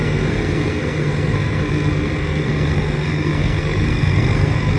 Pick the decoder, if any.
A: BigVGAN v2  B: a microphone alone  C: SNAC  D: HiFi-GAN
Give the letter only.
C